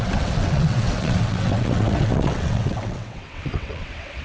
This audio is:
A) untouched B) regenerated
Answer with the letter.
B